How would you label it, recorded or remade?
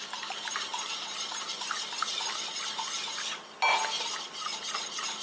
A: recorded